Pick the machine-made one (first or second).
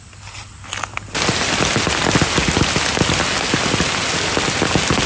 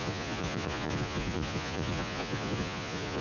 second